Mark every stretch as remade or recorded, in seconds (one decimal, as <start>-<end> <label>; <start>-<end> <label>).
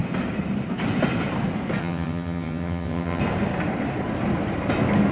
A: 0.0-1.8 recorded; 1.8-3.2 remade; 3.2-5.1 recorded